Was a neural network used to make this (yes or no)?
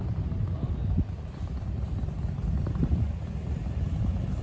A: yes